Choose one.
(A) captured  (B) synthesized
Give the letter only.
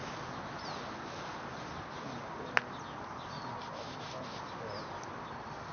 A